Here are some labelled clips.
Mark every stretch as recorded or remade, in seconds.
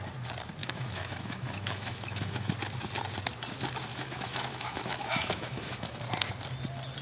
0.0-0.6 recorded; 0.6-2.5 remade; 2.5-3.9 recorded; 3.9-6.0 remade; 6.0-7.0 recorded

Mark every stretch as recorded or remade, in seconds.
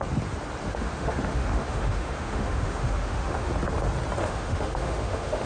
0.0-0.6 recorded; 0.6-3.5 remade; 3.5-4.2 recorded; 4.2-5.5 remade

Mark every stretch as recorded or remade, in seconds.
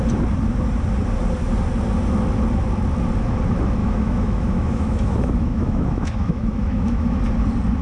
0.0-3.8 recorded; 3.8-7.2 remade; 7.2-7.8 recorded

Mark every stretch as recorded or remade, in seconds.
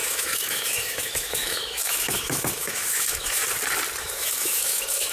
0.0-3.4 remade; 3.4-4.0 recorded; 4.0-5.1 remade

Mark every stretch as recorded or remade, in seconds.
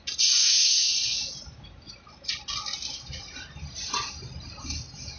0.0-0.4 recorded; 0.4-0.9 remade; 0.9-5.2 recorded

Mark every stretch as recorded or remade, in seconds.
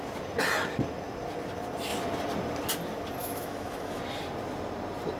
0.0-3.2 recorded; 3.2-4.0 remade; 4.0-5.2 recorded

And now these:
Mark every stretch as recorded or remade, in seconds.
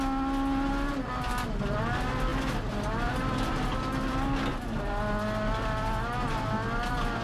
0.0-7.2 recorded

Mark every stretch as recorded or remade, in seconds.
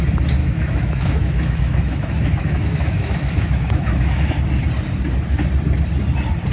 0.0-0.4 recorded; 0.4-4.3 remade; 4.3-6.5 recorded